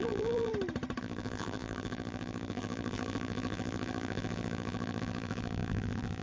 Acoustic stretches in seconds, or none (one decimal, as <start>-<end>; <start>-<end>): 0.5-1.0